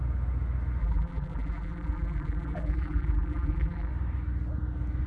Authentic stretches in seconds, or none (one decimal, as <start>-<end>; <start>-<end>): 0.0-0.8; 3.9-5.1